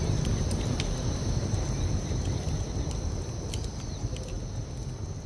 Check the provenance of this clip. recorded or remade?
recorded